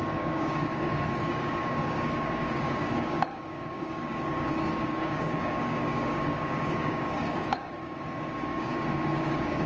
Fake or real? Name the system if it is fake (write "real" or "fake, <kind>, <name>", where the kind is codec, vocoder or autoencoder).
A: fake, codec, DAC